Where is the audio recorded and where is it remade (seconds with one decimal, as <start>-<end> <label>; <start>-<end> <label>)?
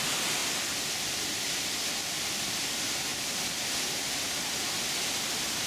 0.0-5.7 recorded